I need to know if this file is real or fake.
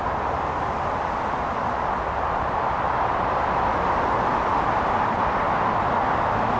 real